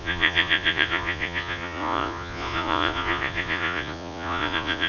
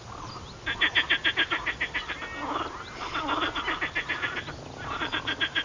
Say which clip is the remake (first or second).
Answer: first